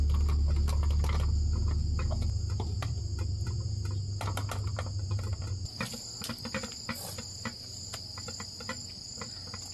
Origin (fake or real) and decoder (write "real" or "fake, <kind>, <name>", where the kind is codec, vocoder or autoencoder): real